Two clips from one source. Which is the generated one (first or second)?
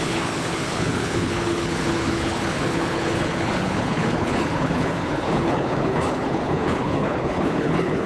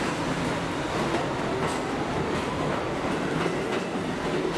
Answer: first